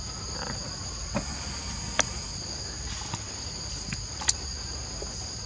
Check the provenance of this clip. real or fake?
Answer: real